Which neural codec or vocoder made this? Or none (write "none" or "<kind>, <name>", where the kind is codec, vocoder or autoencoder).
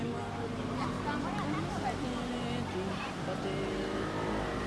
none